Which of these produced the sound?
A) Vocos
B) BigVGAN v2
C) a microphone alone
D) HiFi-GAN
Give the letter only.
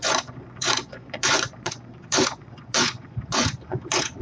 A